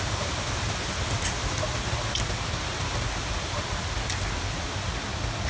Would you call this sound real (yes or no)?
yes